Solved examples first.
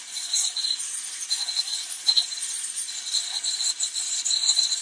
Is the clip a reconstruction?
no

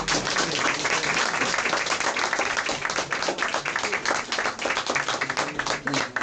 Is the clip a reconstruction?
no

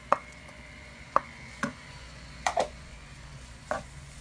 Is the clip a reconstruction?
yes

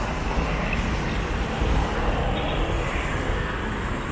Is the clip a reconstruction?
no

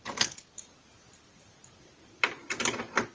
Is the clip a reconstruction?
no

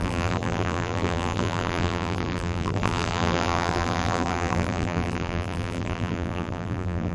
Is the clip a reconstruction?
yes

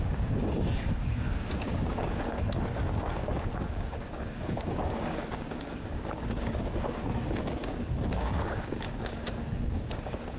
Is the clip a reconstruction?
yes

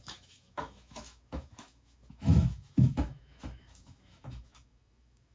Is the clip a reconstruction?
yes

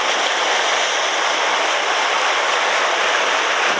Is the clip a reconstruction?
no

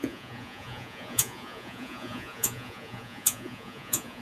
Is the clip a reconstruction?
yes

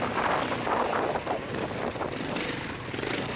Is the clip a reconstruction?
no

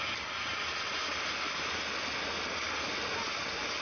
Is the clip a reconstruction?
no